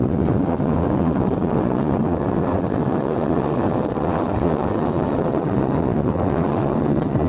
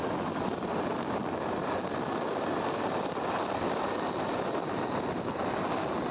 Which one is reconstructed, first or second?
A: first